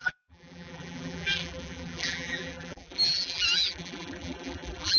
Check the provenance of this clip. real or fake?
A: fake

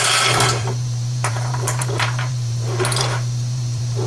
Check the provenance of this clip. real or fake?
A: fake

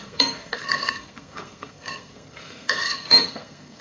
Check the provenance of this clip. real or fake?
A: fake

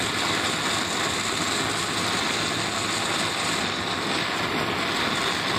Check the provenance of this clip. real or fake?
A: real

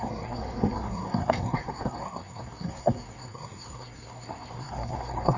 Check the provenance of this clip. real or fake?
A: fake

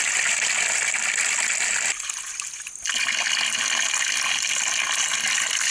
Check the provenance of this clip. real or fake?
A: real